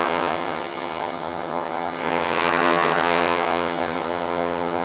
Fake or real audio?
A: fake